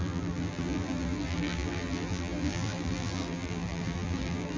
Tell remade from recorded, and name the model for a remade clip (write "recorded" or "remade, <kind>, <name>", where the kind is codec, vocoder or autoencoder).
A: remade, vocoder, BigVGAN v2